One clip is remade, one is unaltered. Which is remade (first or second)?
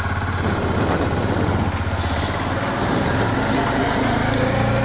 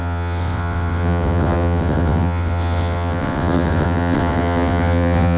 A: second